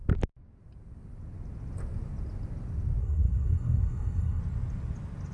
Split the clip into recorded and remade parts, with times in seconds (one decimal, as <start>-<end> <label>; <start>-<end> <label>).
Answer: 0.0-3.0 recorded; 3.0-4.4 remade; 4.4-5.3 recorded

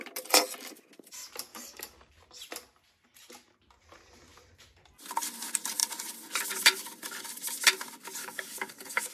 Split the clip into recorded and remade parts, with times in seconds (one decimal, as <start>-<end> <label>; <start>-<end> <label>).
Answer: 0.0-1.5 recorded; 1.5-2.1 remade; 2.1-8.2 recorded; 8.2-9.1 remade

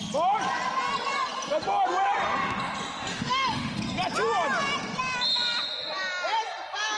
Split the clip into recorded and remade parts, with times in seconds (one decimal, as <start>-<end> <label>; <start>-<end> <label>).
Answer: 0.0-3.1 recorded; 3.1-3.8 remade; 3.8-7.0 recorded

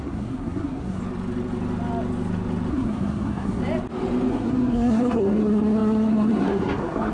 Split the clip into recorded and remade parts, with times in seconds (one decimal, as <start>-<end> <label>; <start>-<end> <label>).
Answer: 0.0-1.0 remade; 1.0-2.7 recorded; 2.7-3.6 remade; 3.6-4.3 recorded; 4.3-7.1 remade

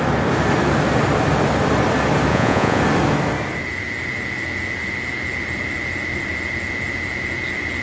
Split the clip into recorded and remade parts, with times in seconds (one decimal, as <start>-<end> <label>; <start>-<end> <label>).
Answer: 0.0-2.3 recorded; 2.3-2.8 remade; 2.8-7.8 recorded

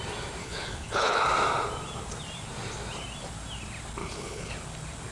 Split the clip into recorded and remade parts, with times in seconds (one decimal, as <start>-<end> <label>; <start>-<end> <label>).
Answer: 0.0-0.4 recorded; 0.4-1.2 remade; 1.2-4.0 recorded; 4.0-4.5 remade; 4.5-5.1 recorded

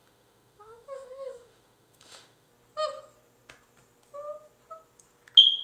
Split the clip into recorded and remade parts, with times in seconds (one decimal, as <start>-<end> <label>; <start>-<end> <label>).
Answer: 0.0-2.5 remade; 2.5-5.6 recorded

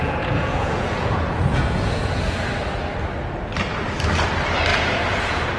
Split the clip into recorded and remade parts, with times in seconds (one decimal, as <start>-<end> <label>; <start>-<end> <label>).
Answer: 0.0-2.2 remade; 2.2-4.7 recorded; 4.7-5.6 remade